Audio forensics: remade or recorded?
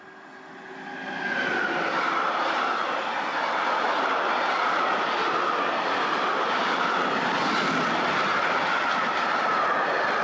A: recorded